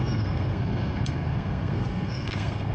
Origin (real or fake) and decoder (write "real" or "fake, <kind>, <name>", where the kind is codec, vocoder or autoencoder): fake, codec, SNAC